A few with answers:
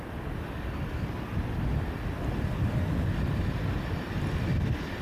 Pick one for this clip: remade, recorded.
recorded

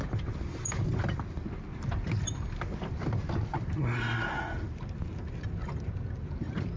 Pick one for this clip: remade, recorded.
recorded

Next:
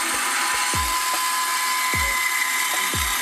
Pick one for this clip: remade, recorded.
recorded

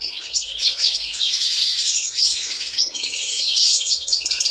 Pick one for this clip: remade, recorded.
remade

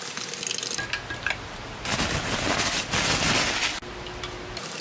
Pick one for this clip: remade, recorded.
recorded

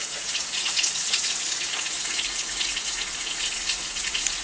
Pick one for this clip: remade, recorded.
remade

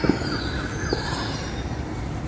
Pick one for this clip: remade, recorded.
recorded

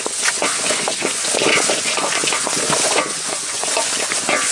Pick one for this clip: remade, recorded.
remade